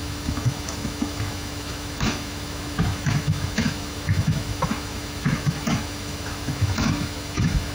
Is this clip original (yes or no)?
no